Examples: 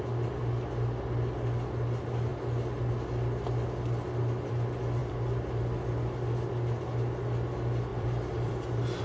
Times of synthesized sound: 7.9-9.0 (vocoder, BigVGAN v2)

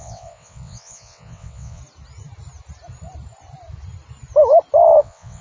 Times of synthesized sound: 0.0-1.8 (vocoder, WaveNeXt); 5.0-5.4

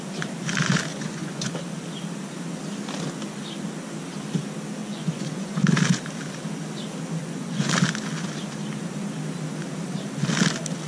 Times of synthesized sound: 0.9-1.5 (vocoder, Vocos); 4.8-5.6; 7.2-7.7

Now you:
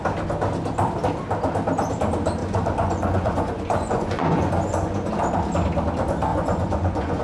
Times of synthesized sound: 2.4-5.1 (vocoder, Vocos); 6.3-7.2

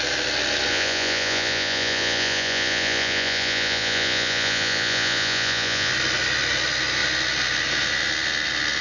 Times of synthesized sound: 0.7-5.9 (vocoder, Vocos)

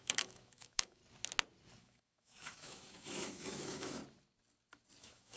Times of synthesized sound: 0.0-1.0 (autoencoder, DAC-VAE); 1.8-4.0; 5.0-5.4